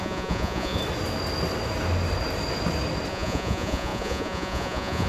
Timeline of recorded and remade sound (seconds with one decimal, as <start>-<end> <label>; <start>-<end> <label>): 0.0-0.8 remade; 0.8-3.1 recorded; 3.1-5.1 remade